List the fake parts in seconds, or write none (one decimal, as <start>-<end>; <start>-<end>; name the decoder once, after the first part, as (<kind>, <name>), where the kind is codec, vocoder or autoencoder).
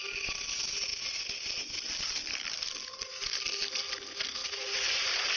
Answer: none